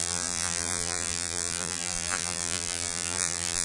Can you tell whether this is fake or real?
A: fake